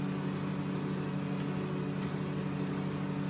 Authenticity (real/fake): real